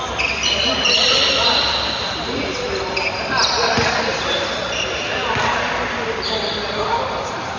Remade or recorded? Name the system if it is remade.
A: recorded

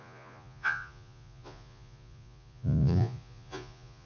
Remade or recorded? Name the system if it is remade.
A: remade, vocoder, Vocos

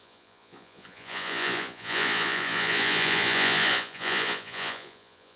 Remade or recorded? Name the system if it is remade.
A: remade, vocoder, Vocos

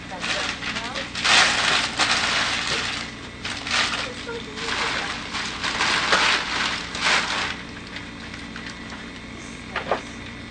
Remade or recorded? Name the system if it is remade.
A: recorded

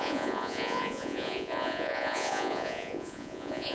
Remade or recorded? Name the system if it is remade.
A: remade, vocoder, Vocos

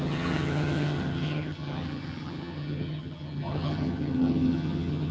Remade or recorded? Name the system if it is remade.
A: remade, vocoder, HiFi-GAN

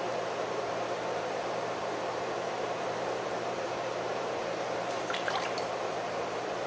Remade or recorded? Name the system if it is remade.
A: remade, vocoder, BigVGAN v2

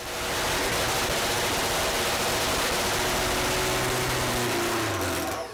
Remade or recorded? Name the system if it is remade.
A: recorded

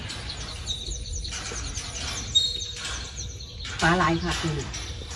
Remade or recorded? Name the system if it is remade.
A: recorded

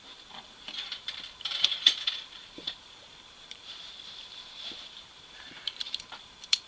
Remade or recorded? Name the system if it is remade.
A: remade, vocoder, BigVGAN v2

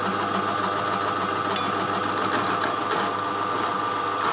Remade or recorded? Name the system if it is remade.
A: recorded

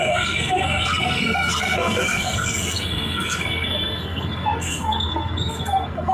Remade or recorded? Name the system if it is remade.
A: remade, codec, SNAC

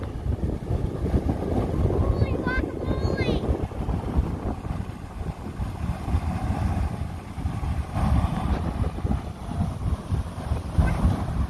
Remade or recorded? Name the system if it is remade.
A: recorded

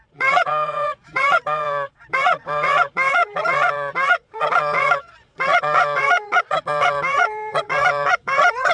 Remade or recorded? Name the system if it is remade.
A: remade, vocoder, Vocos